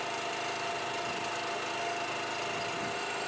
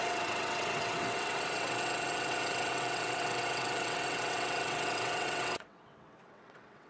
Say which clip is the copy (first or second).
second